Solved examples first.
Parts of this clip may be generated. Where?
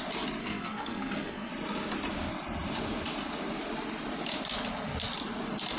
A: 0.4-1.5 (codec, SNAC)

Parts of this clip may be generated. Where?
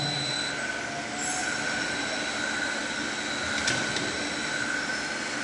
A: 1.4-2.2 (vocoder, BigVGAN v2)